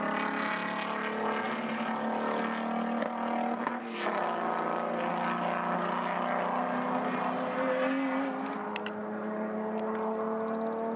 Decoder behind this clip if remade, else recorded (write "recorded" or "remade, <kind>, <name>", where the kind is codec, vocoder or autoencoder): recorded